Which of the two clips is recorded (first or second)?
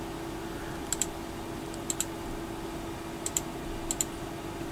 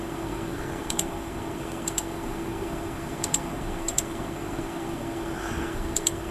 first